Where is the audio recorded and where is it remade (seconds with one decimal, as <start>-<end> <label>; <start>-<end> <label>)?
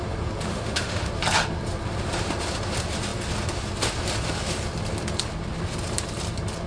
0.0-0.5 recorded; 0.5-1.1 remade; 1.1-6.7 recorded